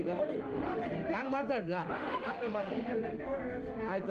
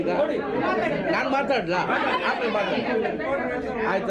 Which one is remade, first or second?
first